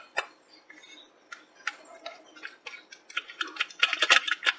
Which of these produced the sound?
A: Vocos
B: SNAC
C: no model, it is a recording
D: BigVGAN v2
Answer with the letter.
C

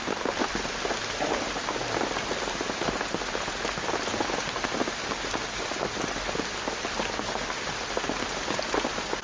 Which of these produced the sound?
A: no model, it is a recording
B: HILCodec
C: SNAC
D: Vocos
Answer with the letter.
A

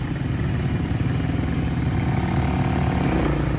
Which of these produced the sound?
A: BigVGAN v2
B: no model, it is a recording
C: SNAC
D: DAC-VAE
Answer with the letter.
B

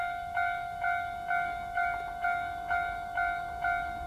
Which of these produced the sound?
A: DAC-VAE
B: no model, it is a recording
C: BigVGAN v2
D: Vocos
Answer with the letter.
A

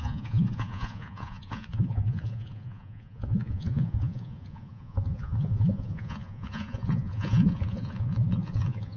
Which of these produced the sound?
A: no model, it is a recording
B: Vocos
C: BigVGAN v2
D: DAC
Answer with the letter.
B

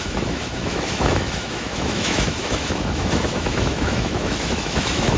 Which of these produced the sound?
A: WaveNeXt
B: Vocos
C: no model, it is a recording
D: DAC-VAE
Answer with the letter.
D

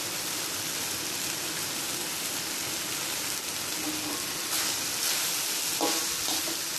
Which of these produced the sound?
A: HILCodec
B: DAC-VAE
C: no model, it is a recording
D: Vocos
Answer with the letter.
C